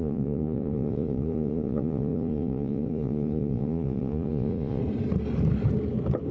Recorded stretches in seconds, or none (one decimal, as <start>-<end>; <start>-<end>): 4.8-6.3